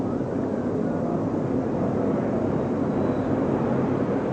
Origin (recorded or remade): recorded